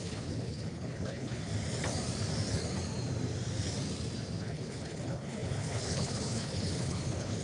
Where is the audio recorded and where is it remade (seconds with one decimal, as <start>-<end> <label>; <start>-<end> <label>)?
0.0-1.5 remade; 1.5-4.4 recorded; 4.4-7.4 remade